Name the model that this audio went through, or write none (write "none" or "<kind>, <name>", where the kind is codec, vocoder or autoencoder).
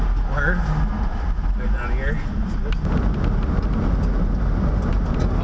none